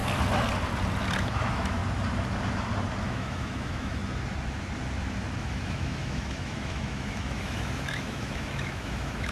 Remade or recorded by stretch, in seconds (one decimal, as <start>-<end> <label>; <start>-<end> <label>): 0.0-1.2 recorded; 1.2-1.8 remade; 1.8-3.0 recorded; 3.0-4.0 remade; 4.0-5.4 recorded; 5.4-9.3 remade